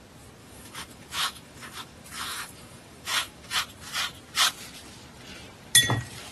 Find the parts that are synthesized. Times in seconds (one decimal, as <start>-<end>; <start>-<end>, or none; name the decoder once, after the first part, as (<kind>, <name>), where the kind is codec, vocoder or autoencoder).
0.4-3.6 (autoencoder, DAC-VAE)